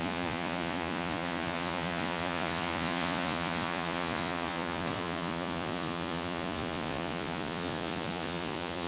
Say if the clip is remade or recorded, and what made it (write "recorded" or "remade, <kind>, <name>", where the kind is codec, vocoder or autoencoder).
remade, vocoder, Vocos